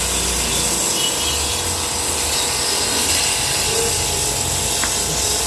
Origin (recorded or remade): recorded